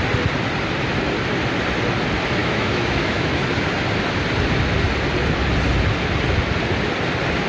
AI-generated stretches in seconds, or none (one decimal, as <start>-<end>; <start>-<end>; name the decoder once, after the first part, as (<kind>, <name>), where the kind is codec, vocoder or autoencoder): 2.4-3.4 (autoencoder, DAC-VAE)